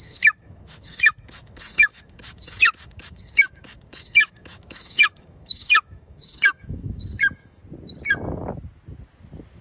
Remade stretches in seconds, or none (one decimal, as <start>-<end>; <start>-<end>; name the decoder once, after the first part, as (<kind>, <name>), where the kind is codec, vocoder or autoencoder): 0.0-7.6 (autoencoder, DAC-VAE)